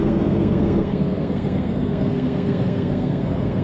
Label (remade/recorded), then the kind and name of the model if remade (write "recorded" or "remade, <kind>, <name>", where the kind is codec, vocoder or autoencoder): remade, codec, SNAC